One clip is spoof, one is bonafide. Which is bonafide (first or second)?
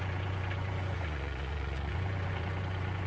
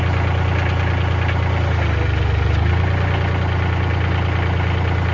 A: second